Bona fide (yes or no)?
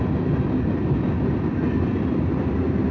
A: yes